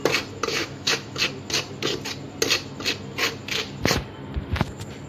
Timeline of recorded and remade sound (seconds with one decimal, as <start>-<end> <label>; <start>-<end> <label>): 0.0-0.5 recorded; 0.5-1.2 remade; 1.2-5.1 recorded